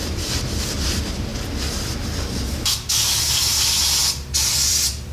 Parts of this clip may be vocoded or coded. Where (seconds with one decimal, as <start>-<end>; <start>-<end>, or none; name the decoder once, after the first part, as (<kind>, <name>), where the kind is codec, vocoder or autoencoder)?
0.0-1.3 (vocoder, BigVGAN v2); 4.4-5.1